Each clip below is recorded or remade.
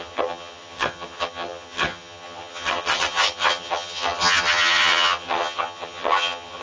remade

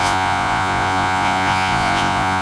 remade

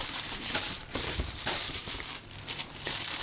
remade